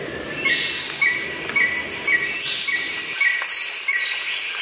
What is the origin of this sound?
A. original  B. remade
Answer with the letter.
A